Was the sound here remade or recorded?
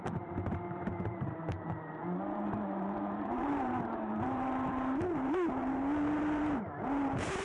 remade